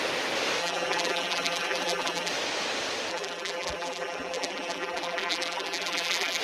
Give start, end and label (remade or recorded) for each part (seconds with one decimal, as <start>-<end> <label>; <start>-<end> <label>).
0.0-0.6 recorded; 0.6-2.3 remade; 2.3-3.1 recorded; 3.1-6.4 remade